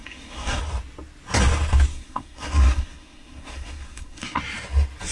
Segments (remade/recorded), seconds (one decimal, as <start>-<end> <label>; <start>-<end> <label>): 0.0-0.6 remade; 0.6-1.9 recorded; 1.9-4.4 remade; 4.4-5.1 recorded